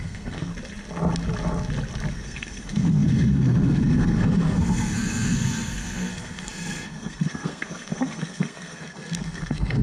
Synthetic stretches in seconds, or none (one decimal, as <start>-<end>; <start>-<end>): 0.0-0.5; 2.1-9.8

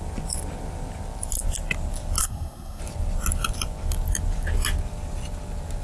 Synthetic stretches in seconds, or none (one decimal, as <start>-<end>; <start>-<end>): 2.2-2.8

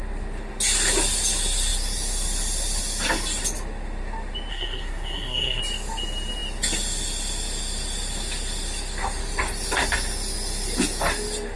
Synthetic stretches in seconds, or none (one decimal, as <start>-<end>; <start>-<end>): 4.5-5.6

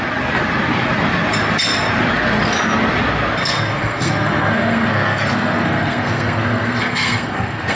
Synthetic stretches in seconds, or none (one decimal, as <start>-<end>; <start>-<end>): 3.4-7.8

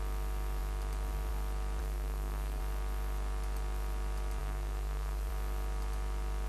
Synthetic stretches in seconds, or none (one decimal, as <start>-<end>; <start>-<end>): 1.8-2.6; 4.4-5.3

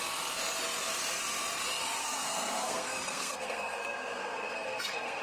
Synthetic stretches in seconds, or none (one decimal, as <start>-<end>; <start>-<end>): 2.0-5.2